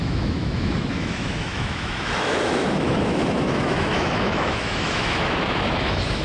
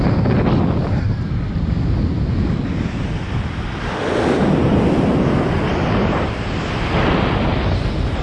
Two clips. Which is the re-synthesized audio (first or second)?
first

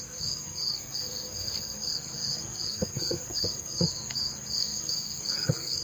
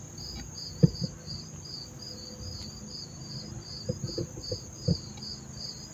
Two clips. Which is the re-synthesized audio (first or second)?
first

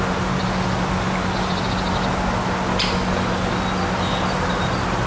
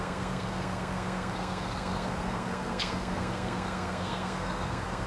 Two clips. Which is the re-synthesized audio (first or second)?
second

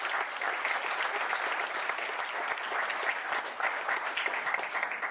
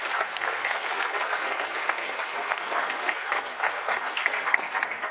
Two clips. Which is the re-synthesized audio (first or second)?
second